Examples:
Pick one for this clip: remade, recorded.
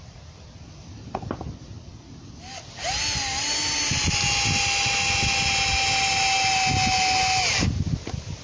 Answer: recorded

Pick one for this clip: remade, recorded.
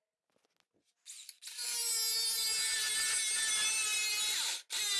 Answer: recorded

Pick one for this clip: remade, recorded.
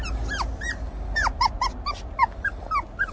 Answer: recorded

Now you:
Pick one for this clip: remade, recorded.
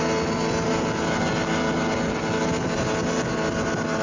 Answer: recorded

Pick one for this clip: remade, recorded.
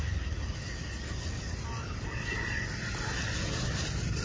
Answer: recorded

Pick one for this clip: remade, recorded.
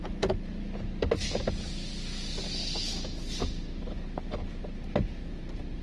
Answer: recorded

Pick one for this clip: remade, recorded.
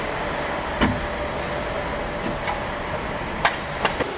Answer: recorded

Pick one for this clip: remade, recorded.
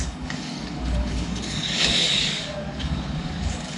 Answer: remade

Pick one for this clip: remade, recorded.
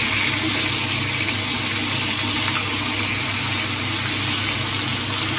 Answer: recorded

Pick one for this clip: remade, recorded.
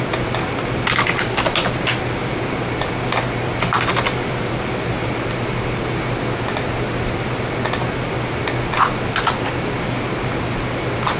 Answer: recorded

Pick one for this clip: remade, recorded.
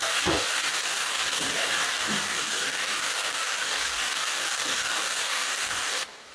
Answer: remade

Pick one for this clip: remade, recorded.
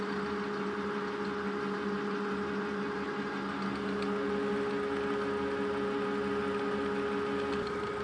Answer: recorded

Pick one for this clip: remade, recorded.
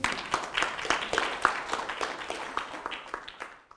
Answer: recorded